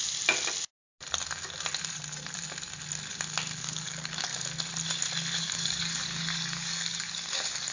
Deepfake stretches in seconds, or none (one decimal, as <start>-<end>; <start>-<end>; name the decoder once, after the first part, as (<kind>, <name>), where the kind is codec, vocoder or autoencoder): 3.6-4.3 (codec, DAC); 5.4-7.7